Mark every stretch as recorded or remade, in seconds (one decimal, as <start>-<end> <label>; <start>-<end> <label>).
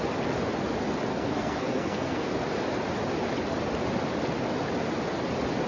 0.0-1.1 recorded; 1.1-2.3 remade; 2.3-5.7 recorded